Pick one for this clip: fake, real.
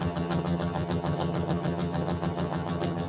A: fake